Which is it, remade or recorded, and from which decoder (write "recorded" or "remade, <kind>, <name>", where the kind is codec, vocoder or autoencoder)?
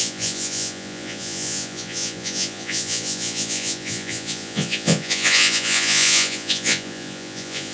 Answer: remade, vocoder, Vocos